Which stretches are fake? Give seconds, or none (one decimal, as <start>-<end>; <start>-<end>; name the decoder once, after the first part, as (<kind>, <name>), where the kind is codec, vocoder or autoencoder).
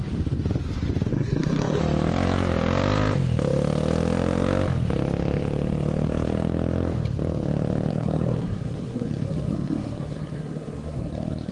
1.1-1.8 (codec, SNAC); 7.9-11.5